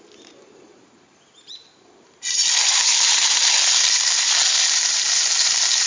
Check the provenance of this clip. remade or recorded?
remade